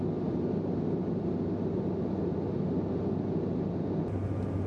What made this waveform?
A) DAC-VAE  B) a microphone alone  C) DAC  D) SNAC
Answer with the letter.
B